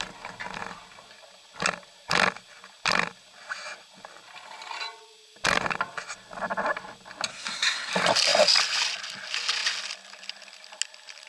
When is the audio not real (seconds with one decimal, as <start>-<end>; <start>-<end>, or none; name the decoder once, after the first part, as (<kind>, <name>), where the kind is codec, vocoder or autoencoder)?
7.3-7.9 (codec, SNAC)

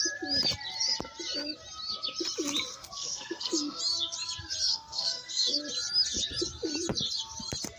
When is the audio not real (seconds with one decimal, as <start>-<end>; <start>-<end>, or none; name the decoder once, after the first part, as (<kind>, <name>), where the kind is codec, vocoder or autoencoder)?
2.7-3.8 (codec, SNAC); 4.7-5.6

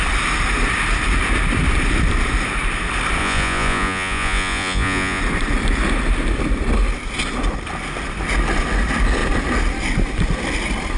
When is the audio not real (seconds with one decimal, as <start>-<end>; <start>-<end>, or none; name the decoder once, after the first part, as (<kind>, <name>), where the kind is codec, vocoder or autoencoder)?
3.2-5.2 (vocoder, Vocos)

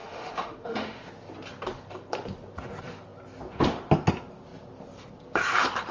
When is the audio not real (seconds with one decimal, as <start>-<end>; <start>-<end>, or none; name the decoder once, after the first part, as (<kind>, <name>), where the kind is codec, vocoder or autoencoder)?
0.0-1.1 (autoencoder, DAC-VAE)